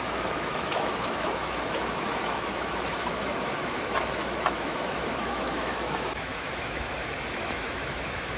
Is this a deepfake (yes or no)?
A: yes